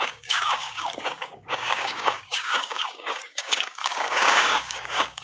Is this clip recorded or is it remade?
remade